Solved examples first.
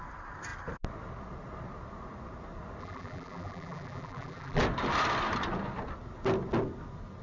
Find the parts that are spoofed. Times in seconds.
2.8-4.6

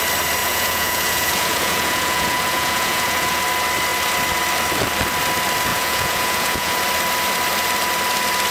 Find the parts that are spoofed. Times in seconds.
0.4-3.4; 5.7-6.8

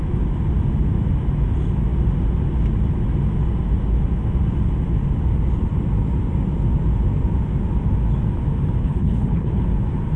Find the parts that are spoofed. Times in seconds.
8.8-9.6

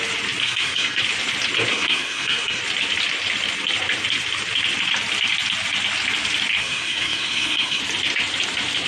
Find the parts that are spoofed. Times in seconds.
0.4-1.0; 1.7-2.6; 6.6-7.8